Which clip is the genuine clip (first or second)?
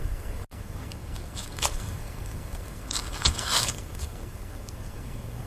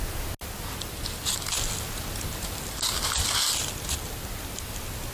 second